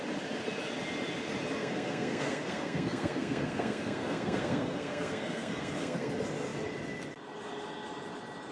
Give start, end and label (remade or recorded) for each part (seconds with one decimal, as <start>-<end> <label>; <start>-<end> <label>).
0.0-1.6 recorded; 1.6-6.1 remade; 6.1-8.5 recorded